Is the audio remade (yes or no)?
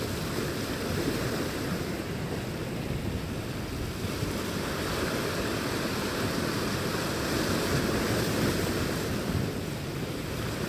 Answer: no